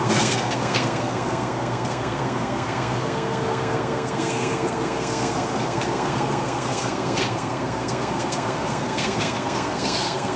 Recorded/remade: remade